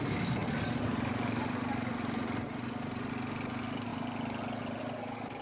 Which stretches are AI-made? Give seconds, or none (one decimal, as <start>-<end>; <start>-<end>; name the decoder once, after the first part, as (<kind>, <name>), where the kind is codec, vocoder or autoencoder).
0.4-3.1 (vocoder, BigVGAN v2)